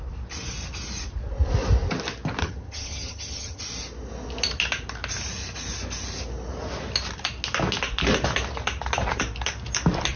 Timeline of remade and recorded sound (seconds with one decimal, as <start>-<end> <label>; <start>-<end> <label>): 0.0-2.4 recorded; 2.4-3.6 remade; 3.6-10.2 recorded